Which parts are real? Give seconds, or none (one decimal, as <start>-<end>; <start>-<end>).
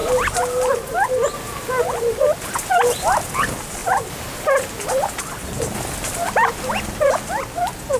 0.0-8.0